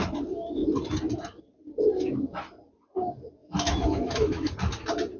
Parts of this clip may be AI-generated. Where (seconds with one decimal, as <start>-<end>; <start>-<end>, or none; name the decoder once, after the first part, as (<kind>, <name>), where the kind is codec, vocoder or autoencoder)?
3.4-4.5 (autoencoder, DAC-VAE)